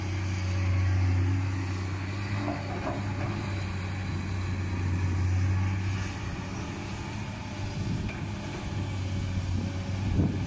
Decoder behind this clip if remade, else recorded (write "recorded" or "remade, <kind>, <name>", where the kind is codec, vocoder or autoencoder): recorded